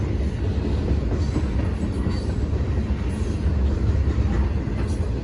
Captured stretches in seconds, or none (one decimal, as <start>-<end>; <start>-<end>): 0.0-5.2